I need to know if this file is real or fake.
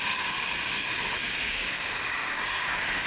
fake